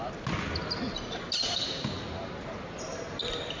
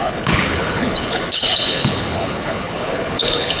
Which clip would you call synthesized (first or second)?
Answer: second